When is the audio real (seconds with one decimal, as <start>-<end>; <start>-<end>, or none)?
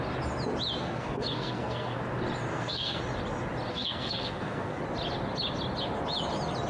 0.0-0.8; 2.0-2.5; 3.0-3.7; 4.8-6.7